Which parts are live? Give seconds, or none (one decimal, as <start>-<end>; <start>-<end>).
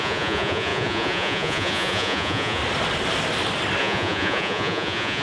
2.6-3.8